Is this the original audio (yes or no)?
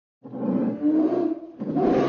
yes